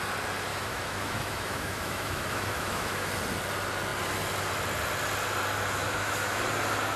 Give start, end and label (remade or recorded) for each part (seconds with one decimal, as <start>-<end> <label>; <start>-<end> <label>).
0.0-0.5 recorded; 0.5-3.1 remade; 3.1-5.8 recorded; 5.8-6.4 remade; 6.4-7.0 recorded